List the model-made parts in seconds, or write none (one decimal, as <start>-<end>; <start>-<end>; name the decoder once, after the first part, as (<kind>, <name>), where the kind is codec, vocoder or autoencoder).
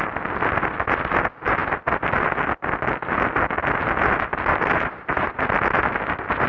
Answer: 4.5-5.5 (vocoder, BigVGAN v2)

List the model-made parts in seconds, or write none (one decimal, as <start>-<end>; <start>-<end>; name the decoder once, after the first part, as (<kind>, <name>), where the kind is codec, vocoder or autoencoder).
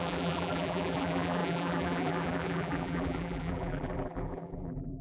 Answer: 0.0-5.0 (vocoder, BigVGAN v2)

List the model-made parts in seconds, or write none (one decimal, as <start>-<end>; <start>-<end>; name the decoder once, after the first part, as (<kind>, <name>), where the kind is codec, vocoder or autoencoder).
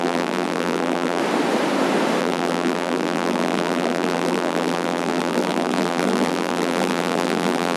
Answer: 0.0-1.2 (vocoder, BigVGAN v2); 2.2-7.8